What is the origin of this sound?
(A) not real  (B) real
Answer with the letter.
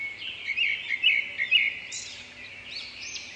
B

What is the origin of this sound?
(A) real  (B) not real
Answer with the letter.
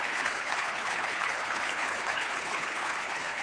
B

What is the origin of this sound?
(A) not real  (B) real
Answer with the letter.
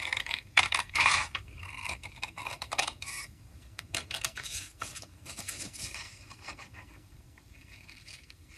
A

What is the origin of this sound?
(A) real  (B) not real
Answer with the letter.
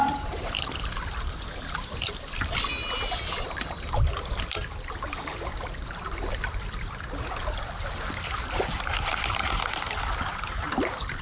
B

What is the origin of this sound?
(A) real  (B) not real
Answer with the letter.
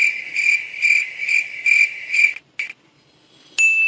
A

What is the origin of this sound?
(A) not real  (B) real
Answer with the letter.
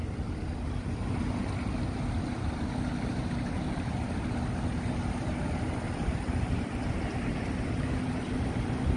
B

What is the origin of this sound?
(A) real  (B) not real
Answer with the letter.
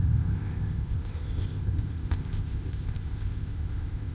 B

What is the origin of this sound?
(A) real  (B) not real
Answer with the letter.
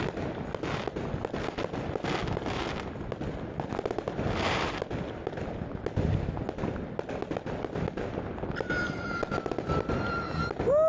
A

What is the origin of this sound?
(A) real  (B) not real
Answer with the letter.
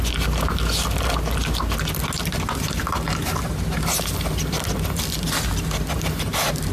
A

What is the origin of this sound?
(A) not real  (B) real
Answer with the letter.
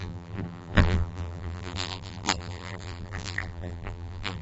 A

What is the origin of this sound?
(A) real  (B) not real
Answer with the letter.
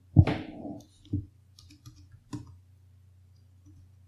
A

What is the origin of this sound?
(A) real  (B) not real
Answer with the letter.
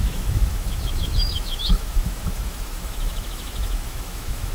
B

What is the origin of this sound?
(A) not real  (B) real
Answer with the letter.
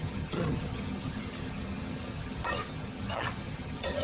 A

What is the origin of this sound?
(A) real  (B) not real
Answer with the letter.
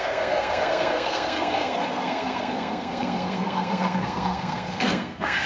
B